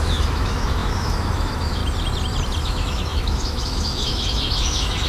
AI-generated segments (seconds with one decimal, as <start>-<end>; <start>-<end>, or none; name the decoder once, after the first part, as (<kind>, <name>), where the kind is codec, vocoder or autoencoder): 0.0-1.8 (autoencoder, DAC-VAE); 2.6-5.1